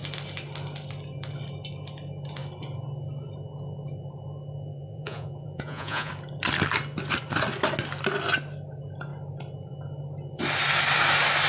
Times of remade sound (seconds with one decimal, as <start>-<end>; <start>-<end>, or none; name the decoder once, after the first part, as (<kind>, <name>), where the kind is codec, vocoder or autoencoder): 4.7-6.1 (vocoder, Vocos)